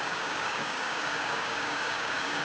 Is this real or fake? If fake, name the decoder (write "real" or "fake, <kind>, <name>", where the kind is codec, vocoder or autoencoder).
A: fake, codec, DAC